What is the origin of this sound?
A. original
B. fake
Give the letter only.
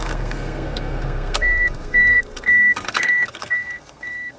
B